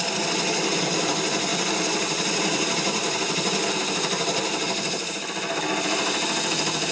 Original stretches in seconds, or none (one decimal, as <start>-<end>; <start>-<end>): 0.0-1.5; 5.6-6.9